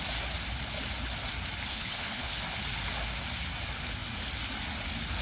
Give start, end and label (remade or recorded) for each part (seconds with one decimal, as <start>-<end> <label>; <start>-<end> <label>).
0.0-1.7 recorded; 1.7-2.4 remade; 2.4-5.2 recorded